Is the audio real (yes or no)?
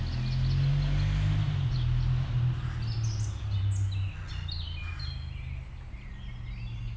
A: yes